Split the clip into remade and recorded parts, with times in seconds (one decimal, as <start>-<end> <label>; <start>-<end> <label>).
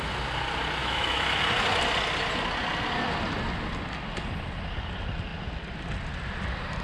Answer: 0.0-0.8 recorded; 0.8-1.4 remade; 1.4-6.8 recorded